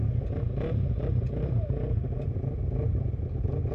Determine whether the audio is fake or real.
fake